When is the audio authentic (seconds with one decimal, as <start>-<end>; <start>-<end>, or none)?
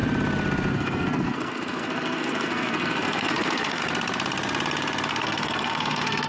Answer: 0.0-0.7; 3.8-5.1